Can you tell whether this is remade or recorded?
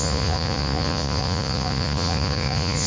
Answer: remade